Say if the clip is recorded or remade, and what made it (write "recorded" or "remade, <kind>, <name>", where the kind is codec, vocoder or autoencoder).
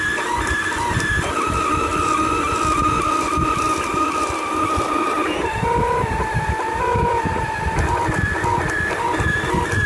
remade, vocoder, BigVGAN v2